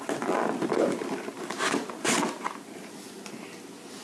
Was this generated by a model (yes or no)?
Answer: no